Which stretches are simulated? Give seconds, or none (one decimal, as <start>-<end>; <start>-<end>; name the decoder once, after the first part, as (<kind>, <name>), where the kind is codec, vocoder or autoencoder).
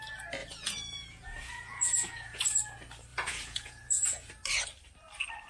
0.4-2.6 (vocoder, Vocos); 3.1-4.3